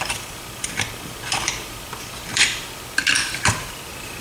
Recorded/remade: remade